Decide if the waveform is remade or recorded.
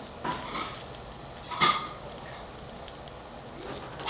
recorded